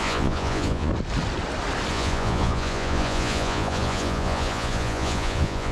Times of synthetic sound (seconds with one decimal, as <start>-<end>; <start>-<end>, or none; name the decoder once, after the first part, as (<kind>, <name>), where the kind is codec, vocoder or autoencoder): 0.0-0.9 (vocoder, Vocos); 1.9-5.7